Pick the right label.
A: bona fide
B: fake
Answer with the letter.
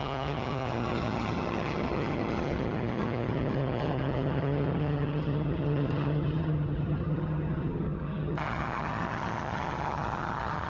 B